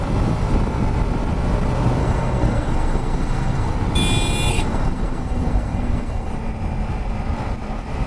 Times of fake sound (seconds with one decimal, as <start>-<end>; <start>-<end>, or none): 2.0-3.7; 4.5-6.3